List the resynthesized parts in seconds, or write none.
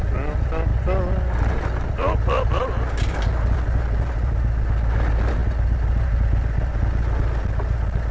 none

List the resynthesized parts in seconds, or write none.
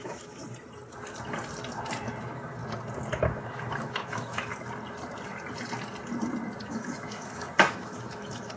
0.0-0.4 (autoencoder, DAC-VAE); 2.2-2.6; 3.2-4.5; 6.6-8.6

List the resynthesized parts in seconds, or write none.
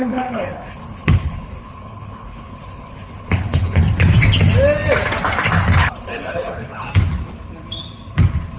0.0-3.8 (codec, HILCodec); 5.7-6.9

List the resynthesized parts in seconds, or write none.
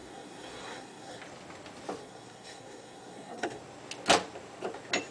0.0-1.2 (codec, SNAC); 2.0-3.6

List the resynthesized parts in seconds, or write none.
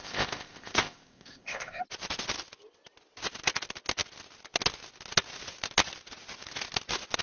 0.0-1.8 (codec, ZipCodec)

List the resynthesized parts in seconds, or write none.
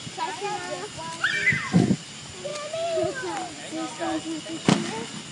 none